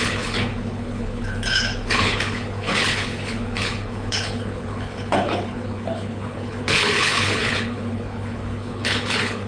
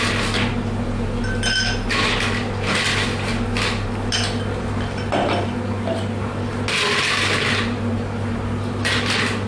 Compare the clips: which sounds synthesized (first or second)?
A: first